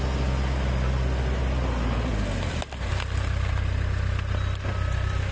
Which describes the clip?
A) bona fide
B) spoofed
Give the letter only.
A